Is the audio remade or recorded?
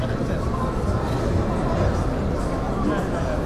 recorded